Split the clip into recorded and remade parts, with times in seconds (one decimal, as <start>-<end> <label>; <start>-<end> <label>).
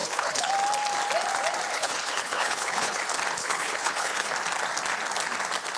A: 0.0-0.5 remade; 0.5-1.7 recorded; 1.7-3.0 remade; 3.0-3.4 recorded; 3.4-4.3 remade; 4.3-5.8 recorded